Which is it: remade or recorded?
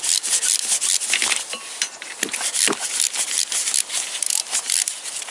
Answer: recorded